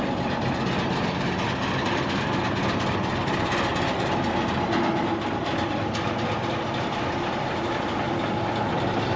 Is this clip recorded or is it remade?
recorded